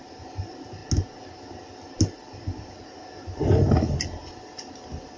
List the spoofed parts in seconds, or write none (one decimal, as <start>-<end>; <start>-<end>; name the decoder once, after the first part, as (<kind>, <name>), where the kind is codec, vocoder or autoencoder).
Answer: none